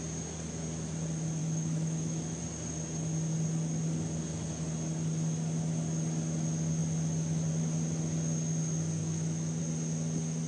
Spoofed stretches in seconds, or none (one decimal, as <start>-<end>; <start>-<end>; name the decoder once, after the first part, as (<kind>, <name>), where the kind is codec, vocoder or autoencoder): 1.4-2.4 (autoencoder, DAC-VAE); 9.0-9.6